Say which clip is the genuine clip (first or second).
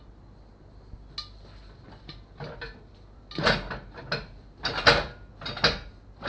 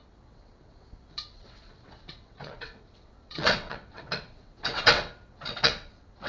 first